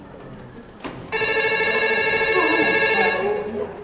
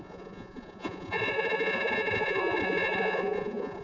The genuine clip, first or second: first